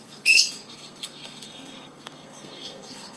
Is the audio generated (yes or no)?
yes